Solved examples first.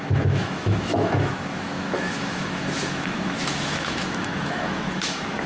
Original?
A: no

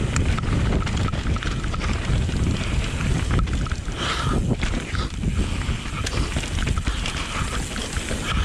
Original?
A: yes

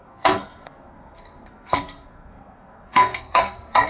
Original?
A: no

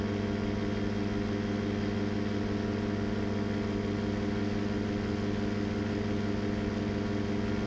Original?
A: yes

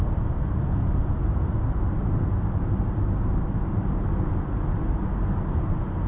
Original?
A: yes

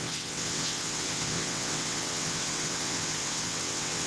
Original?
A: no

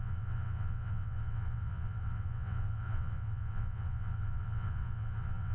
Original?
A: no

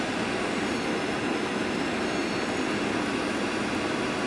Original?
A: yes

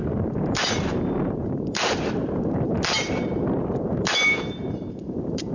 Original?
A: no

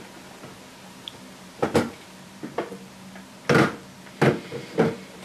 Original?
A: yes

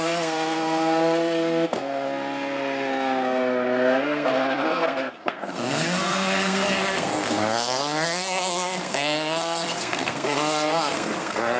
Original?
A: no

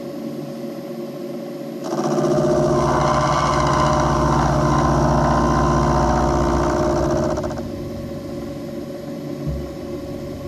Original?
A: yes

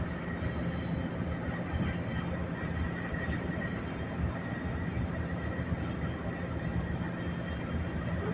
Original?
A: yes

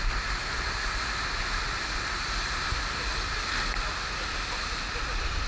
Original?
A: yes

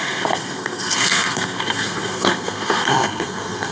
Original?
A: no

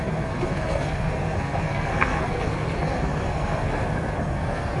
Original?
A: no